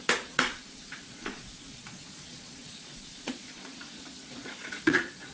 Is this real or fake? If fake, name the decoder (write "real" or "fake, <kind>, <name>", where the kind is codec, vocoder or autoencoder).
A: fake, vocoder, Vocos